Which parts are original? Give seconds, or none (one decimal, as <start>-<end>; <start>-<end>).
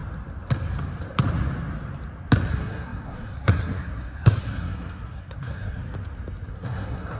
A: 0.0-2.5; 5.8-6.5